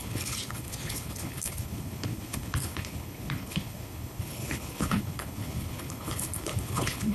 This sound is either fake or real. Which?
fake